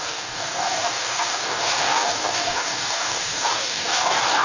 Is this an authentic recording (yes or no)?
no